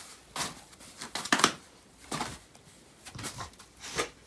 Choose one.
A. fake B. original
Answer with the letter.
B